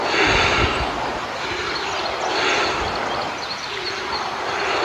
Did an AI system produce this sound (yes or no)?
no